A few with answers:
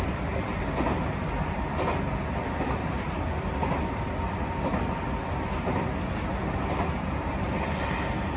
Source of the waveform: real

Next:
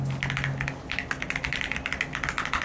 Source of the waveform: real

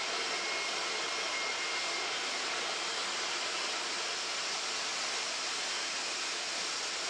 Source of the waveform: real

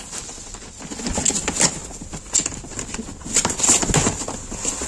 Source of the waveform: real